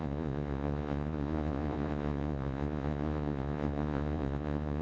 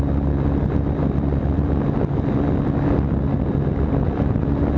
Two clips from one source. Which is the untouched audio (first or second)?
second